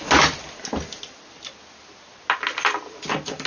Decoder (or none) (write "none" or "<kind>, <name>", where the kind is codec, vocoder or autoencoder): none